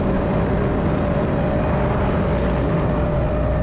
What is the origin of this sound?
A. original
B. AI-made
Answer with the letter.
A